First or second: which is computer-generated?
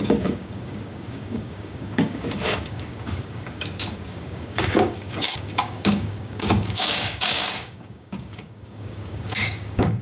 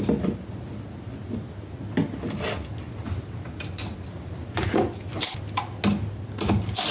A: first